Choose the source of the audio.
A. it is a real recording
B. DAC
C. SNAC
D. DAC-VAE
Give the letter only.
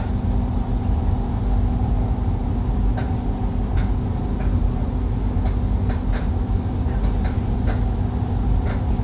A